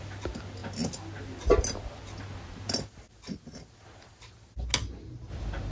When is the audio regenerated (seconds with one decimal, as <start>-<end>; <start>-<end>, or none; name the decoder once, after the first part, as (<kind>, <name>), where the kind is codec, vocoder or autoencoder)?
none